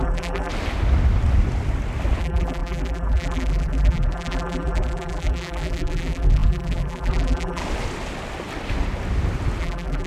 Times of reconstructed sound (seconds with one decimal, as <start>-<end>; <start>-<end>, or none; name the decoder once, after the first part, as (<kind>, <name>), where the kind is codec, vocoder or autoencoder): 0.0-0.5 (vocoder, BigVGAN v2); 2.2-7.6; 9.6-10.1

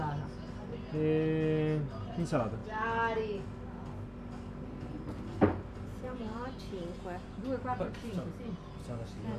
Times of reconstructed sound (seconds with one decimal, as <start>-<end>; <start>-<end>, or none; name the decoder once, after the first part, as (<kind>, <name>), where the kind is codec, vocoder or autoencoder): 5.9-6.6 (vocoder, BigVGAN v2)